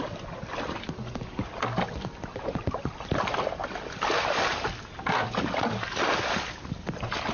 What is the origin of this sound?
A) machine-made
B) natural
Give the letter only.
B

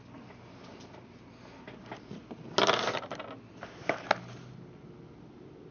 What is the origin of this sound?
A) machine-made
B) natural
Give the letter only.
B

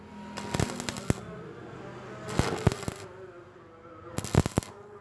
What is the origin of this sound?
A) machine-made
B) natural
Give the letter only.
B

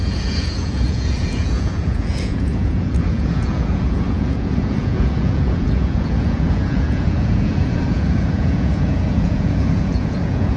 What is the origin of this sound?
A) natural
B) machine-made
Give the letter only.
B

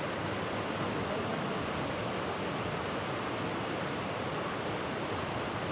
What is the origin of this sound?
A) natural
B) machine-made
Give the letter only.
A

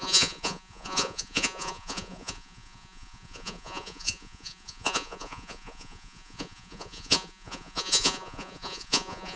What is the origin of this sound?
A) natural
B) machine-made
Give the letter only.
B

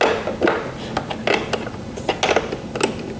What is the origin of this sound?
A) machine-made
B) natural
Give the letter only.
B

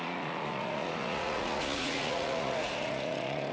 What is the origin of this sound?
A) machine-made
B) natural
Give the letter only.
A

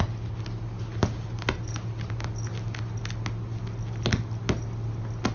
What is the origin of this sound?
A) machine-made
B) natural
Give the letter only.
B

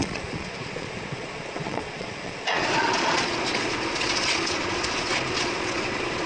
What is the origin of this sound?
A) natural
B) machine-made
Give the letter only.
B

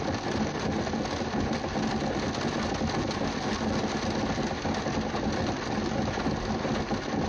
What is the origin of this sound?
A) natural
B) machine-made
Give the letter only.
A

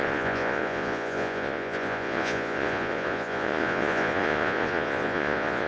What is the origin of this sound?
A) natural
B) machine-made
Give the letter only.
B